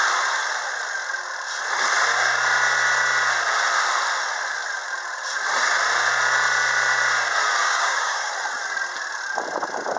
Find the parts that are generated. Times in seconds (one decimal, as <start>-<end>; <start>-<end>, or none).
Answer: 7.6-8.3